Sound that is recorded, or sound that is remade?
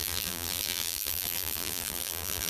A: remade